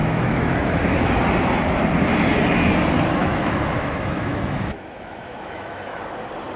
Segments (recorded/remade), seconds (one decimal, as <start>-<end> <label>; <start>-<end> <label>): 0.0-0.8 remade; 0.8-3.2 recorded; 3.2-6.0 remade; 6.0-6.6 recorded